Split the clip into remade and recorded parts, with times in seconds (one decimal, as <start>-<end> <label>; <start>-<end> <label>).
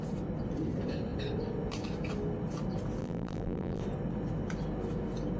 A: 0.0-3.0 recorded; 3.0-3.8 remade; 3.8-5.4 recorded